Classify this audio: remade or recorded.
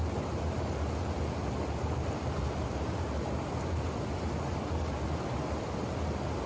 recorded